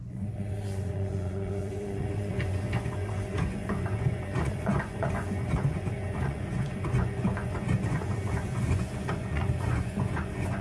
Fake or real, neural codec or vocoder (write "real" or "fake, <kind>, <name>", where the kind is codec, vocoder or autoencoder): fake, vocoder, Vocos